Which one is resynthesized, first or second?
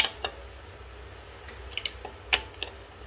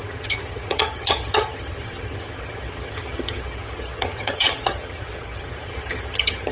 second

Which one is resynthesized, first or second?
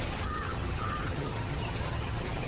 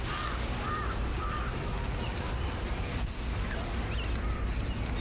first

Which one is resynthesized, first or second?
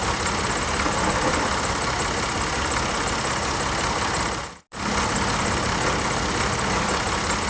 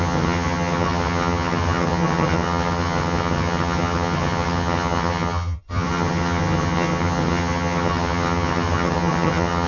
second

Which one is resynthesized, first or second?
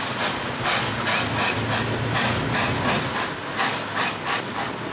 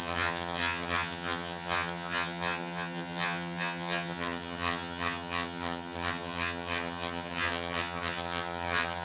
second